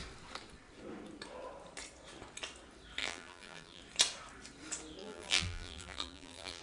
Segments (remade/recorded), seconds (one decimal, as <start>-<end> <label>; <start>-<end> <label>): 0.0-3.0 recorded; 3.0-3.8 remade; 3.8-5.0 recorded; 5.0-6.6 remade